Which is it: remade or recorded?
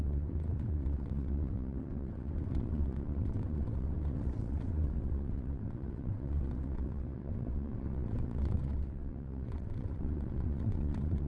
remade